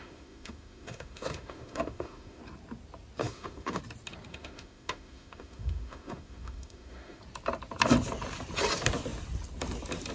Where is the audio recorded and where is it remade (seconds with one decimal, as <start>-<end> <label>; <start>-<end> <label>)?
0.0-2.4 remade; 2.4-3.2 recorded; 3.2-3.8 remade; 3.8-4.3 recorded; 4.3-7.2 remade; 7.2-10.1 recorded